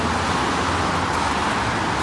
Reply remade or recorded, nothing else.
recorded